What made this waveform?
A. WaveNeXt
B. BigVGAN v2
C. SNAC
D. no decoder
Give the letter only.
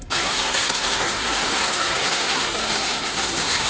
C